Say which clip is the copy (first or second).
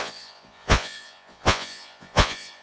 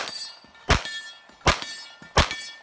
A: first